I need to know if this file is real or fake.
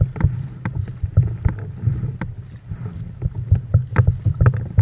real